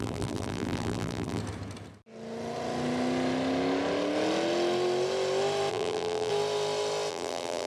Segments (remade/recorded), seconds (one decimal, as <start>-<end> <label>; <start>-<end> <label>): 0.0-1.4 remade; 1.4-5.7 recorded; 5.7-6.3 remade; 6.3-7.1 recorded; 7.1-7.7 remade